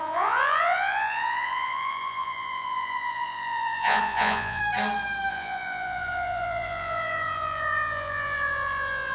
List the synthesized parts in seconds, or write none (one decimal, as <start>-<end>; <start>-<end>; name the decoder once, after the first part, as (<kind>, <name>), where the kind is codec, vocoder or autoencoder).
0.0-4.6 (vocoder, Vocos); 5.3-9.1